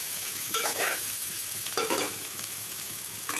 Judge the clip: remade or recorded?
remade